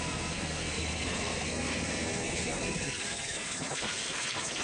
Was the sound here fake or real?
fake